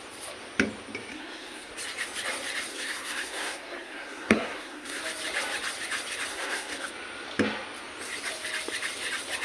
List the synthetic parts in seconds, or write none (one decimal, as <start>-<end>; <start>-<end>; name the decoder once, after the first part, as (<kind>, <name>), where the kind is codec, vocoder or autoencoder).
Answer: 1.1-1.7 (codec, SNAC); 2.7-5.0; 6.3-6.9